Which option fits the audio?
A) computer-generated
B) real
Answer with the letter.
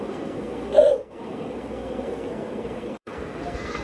A